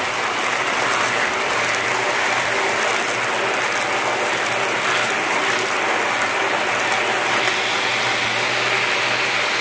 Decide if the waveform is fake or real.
real